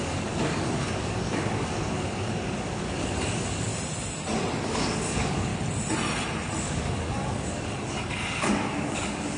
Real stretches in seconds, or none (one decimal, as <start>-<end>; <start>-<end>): 3.7-4.6; 5.5-6.6

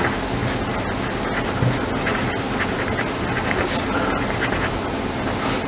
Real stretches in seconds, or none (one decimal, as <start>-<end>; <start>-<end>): 0.0-5.7

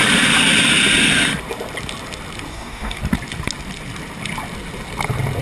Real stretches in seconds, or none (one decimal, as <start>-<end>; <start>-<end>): 0.0-2.5; 3.0-5.4

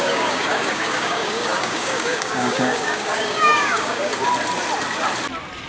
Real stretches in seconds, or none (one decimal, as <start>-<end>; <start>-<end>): 4.1-5.7

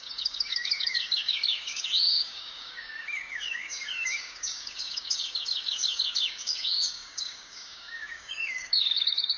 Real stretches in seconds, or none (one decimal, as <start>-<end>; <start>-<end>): none

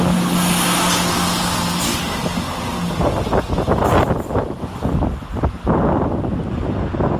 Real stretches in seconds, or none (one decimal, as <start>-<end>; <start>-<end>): 0.0-7.2

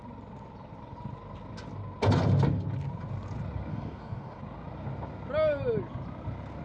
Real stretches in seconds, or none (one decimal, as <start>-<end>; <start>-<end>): 0.0-3.7; 4.4-6.6